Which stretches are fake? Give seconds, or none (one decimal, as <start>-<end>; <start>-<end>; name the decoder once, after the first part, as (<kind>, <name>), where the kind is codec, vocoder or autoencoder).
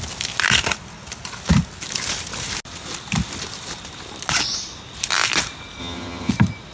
5.8-6.3 (vocoder, HiFi-GAN)